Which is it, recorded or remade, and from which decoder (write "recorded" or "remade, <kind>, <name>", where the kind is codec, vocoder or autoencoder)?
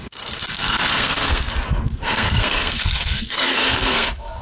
remade, codec, SNAC